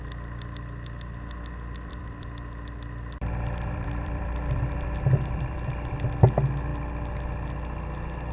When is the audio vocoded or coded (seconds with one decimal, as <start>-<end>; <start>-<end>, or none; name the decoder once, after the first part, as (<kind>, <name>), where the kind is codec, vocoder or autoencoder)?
1.9-5.9 (vocoder, BigVGAN v2)